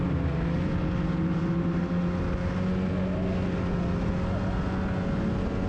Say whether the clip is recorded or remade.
recorded